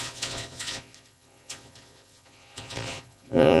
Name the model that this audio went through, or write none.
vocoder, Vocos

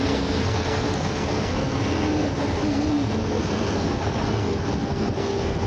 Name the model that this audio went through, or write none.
codec, SNAC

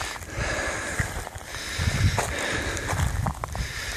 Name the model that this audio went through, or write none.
none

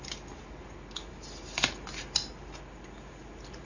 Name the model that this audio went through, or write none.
none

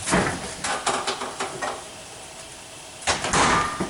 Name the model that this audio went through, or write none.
none